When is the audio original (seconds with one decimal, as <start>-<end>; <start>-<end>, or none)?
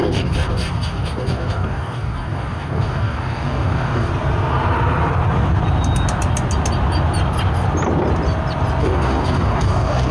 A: 4.1-8.8